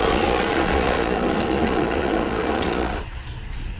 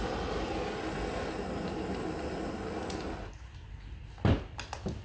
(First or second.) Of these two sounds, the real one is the second